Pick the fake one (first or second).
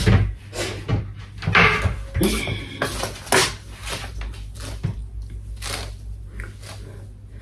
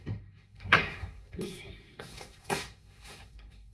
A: second